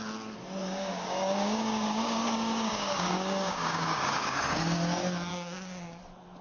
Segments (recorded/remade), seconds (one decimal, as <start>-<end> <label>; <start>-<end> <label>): 0.0-0.6 recorded; 0.6-4.4 remade; 4.4-5.3 recorded; 5.3-6.0 remade; 6.0-6.4 recorded